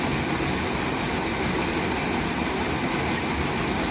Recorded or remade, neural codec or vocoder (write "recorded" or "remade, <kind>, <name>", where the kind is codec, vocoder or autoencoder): recorded